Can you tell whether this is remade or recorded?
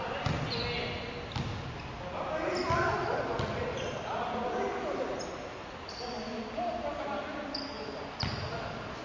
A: recorded